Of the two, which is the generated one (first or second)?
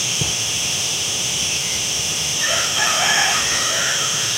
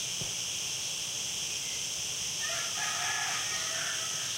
first